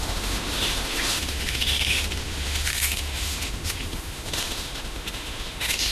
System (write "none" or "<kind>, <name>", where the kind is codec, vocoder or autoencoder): autoencoder, DAC-VAE